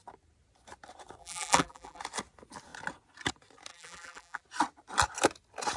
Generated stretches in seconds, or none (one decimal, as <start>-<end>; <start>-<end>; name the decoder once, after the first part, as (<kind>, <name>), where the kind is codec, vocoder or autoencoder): 1.2-2.0 (vocoder, BigVGAN v2); 3.7-4.4